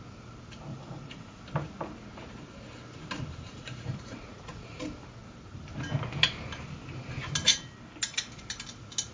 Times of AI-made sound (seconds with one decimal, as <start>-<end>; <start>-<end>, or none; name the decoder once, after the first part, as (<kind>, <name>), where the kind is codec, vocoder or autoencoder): 0.7-1.4 (vocoder, Vocos); 3.5-4.8